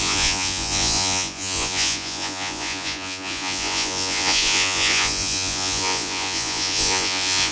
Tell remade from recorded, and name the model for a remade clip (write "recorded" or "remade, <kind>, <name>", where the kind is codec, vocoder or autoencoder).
remade, vocoder, Vocos